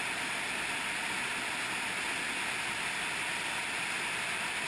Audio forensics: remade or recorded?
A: recorded